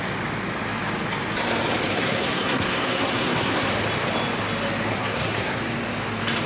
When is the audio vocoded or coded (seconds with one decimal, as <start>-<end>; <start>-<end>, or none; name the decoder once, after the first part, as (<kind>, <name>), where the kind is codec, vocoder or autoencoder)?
1.9-3.7 (codec, SNAC); 4.9-5.6